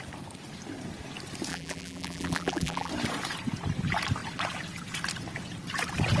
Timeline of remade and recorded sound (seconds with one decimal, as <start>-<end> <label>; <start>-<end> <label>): 0.0-1.5 recorded; 1.5-2.9 remade; 2.9-6.2 recorded

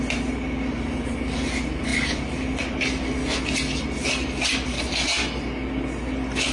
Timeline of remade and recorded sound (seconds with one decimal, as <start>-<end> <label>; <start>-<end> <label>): 0.0-6.5 recorded

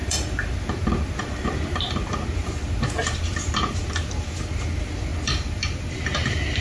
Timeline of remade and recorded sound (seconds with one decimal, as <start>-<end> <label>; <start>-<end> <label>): 0.0-5.1 remade; 5.1-6.6 recorded

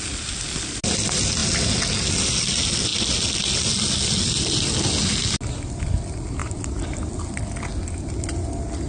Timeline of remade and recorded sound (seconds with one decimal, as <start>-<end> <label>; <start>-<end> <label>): 0.0-6.4 recorded; 6.4-7.1 remade; 7.1-8.9 recorded

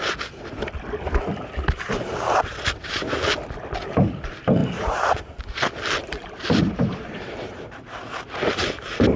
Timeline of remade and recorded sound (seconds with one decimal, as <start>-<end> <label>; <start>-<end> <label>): 0.0-4.6 recorded; 4.6-5.4 remade; 5.4-6.0 recorded; 6.0-8.0 remade; 8.0-9.2 recorded

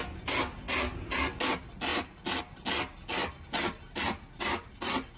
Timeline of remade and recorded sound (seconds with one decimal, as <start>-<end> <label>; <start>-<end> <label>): 0.0-1.9 recorded; 1.9-2.4 remade; 2.4-5.2 recorded

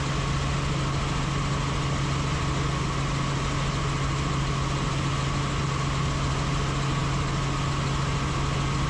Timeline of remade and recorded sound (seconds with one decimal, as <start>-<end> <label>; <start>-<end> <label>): 0.0-8.9 recorded